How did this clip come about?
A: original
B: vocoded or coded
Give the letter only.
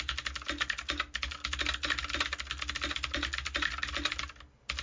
A